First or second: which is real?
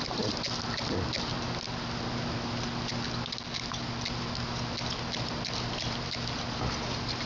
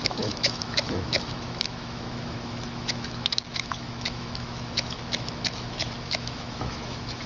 first